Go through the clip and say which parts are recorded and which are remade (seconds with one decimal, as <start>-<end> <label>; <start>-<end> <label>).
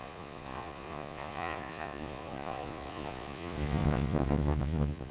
0.0-5.1 remade